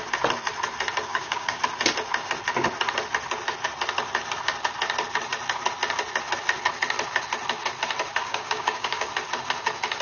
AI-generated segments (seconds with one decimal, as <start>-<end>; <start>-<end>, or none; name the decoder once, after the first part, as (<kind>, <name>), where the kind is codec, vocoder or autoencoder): 1.1-1.6 (codec, DAC); 8.2-9.1